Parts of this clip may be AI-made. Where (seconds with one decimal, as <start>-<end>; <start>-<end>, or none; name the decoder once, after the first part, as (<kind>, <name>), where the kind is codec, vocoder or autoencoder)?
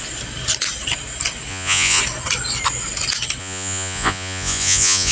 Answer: 1.5-2.0 (vocoder, Vocos); 3.4-5.1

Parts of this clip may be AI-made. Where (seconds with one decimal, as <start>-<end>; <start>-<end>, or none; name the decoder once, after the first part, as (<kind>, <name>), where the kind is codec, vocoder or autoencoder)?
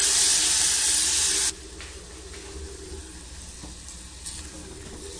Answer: none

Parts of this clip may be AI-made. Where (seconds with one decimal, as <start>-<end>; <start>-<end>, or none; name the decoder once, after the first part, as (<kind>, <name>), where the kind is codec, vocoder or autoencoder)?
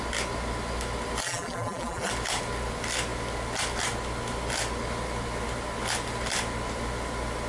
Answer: 1.2-2.1 (vocoder, BigVGAN v2)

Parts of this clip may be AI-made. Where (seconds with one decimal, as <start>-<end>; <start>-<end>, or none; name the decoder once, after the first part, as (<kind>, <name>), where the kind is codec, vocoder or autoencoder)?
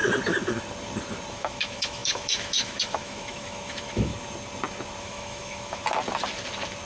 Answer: 1.3-4.1 (autoencoder, DAC-VAE); 5.0-5.8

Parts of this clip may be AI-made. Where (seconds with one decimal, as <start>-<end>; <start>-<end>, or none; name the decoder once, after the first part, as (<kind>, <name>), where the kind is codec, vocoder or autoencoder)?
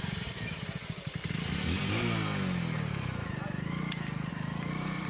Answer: 0.0-1.2 (vocoder, BigVGAN v2); 4.3-5.1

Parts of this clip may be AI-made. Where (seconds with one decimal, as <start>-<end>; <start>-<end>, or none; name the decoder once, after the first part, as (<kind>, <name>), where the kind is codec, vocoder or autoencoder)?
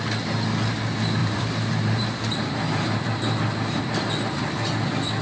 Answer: 1.2-3.8 (vocoder, BigVGAN v2)